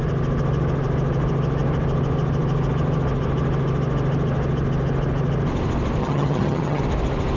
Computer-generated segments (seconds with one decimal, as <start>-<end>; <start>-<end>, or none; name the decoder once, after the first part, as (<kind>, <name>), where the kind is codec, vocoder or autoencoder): 6.0-6.8 (vocoder, HiFi-GAN)